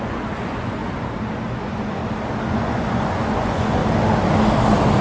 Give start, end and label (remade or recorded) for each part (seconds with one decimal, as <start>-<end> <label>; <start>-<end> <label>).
0.0-0.8 remade; 0.8-1.5 recorded; 1.5-2.0 remade; 2.0-2.5 recorded; 2.5-3.8 remade; 3.8-5.0 recorded